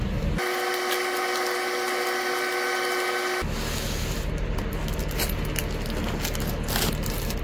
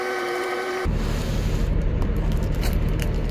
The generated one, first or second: second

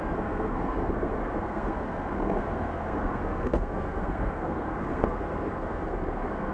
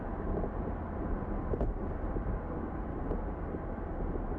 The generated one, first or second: first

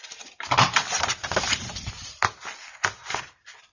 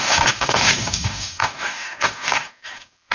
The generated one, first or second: second